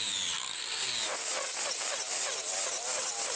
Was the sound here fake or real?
real